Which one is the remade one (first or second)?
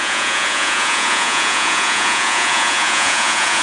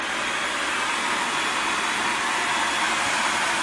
first